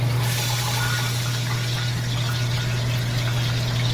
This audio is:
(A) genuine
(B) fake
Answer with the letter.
A